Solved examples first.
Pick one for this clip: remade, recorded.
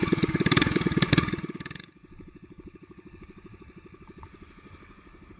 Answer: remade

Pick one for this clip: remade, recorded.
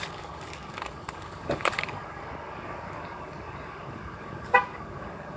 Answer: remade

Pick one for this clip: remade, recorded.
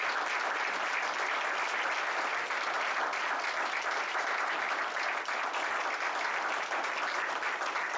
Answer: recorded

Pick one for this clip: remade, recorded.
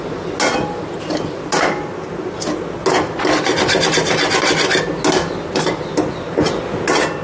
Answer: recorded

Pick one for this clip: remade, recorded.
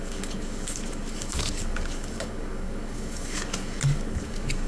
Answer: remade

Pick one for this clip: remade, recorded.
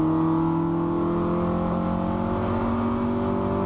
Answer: recorded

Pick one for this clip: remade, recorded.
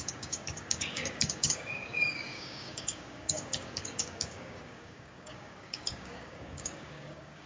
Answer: remade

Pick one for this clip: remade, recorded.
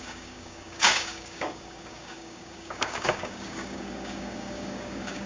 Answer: remade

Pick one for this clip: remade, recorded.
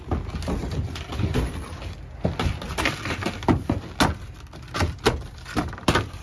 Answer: recorded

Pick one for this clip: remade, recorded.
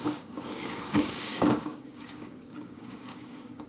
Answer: remade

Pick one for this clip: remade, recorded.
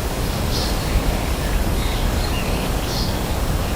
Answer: remade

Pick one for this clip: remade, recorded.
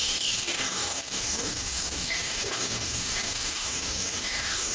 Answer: remade